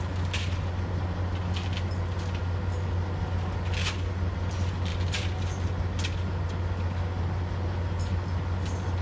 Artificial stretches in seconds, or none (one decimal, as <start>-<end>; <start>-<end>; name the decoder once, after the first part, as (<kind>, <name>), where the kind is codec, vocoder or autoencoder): none